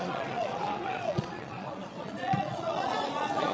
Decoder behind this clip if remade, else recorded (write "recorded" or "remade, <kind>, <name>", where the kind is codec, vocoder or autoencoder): remade, vocoder, Vocos